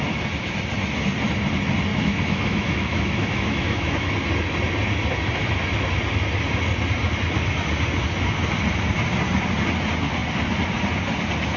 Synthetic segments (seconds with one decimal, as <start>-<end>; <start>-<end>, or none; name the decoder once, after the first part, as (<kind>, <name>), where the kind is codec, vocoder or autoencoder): 1.9-4.1 (autoencoder, DAC-VAE)